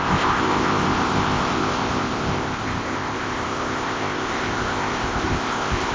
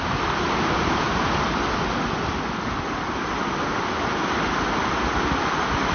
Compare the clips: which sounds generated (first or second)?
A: first